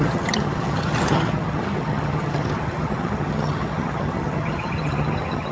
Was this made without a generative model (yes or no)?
no